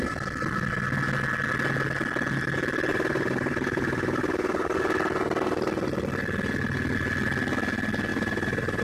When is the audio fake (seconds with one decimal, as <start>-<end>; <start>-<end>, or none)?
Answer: 2.9-4.8; 8.1-8.8

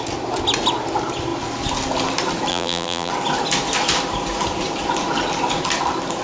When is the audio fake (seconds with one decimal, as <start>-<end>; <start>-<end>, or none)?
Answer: 2.5-3.1

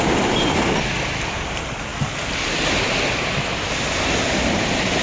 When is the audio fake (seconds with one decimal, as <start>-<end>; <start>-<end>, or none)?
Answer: none

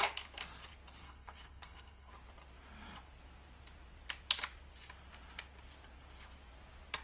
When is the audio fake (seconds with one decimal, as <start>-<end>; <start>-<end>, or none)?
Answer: 1.0-2.1

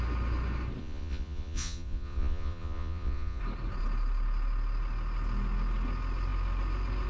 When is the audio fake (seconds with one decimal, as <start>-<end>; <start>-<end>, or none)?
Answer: 0.8-3.4